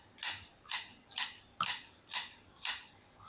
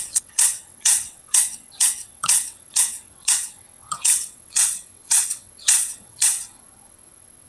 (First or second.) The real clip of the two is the first